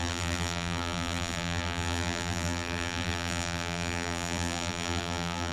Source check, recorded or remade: remade